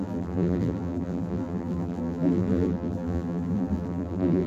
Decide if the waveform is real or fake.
fake